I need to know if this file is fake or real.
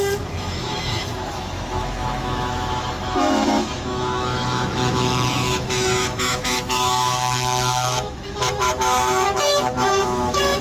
fake